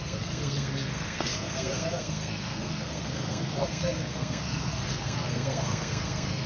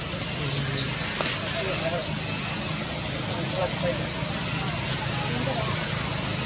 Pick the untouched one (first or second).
second